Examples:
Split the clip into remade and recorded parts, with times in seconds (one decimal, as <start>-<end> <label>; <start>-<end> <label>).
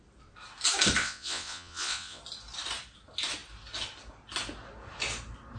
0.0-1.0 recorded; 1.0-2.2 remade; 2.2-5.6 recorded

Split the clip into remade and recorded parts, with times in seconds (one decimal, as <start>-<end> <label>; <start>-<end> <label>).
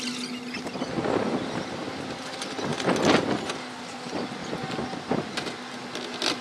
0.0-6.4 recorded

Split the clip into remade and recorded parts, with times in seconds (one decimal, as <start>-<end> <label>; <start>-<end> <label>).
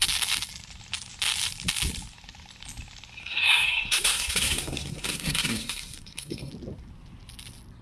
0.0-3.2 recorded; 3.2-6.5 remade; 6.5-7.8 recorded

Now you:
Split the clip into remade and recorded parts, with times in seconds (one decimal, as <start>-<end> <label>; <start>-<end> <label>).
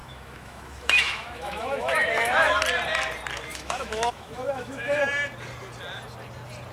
0.0-2.6 remade; 2.6-3.5 recorded; 3.5-5.0 remade; 5.0-6.7 recorded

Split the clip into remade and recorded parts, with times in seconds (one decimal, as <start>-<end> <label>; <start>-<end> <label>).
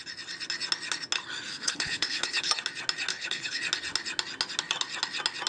0.0-1.5 recorded; 1.5-2.5 remade; 2.5-3.1 recorded; 3.1-3.6 remade; 3.6-5.5 recorded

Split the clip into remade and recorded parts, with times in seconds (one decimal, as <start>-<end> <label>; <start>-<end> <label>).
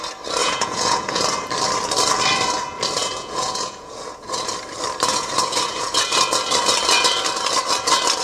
0.0-0.4 recorded; 0.4-1.2 remade; 1.2-3.0 recorded; 3.0-4.4 remade; 4.4-5.1 recorded; 5.1-6.0 remade; 6.0-8.2 recorded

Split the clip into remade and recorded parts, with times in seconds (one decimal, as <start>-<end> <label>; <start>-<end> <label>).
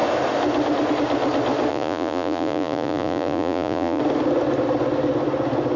0.0-1.7 recorded; 1.7-4.0 remade; 4.0-5.8 recorded